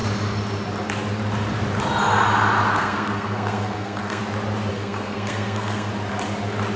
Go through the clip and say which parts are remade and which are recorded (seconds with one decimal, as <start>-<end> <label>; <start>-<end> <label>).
0.0-2.7 recorded; 2.7-4.2 remade; 4.2-4.7 recorded; 4.7-5.9 remade; 5.9-6.8 recorded